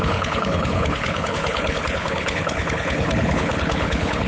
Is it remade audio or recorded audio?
remade